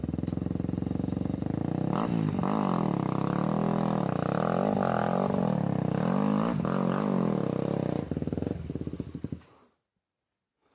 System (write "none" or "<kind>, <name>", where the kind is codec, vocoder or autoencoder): none